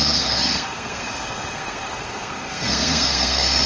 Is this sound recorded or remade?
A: remade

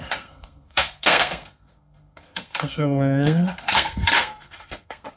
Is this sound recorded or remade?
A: remade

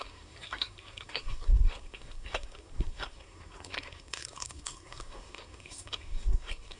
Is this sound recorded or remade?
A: remade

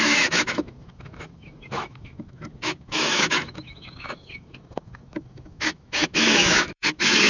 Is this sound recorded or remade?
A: remade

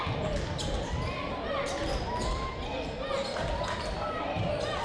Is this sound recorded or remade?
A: recorded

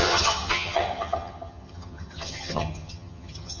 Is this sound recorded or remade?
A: remade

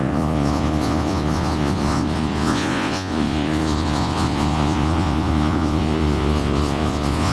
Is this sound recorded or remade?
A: remade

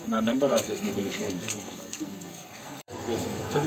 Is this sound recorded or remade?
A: remade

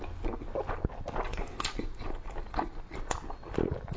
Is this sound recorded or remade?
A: recorded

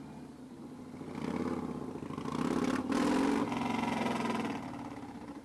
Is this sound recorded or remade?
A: recorded